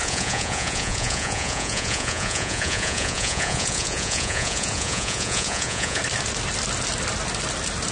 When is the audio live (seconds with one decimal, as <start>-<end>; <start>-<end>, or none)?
6.0-7.9